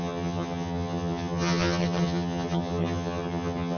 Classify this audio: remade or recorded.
remade